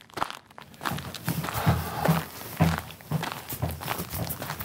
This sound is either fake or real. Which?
real